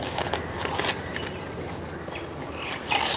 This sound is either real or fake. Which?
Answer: real